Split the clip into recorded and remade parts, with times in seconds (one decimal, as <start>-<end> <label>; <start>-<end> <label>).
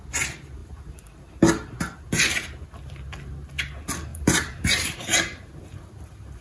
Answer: 0.0-0.6 recorded; 0.6-1.2 remade; 1.2-4.1 recorded; 4.1-6.4 remade